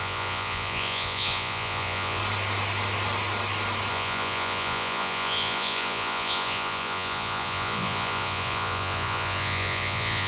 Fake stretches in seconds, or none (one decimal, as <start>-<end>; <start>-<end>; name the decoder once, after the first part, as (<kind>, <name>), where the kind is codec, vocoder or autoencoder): 0.0-2.2 (vocoder, Vocos); 3.9-10.3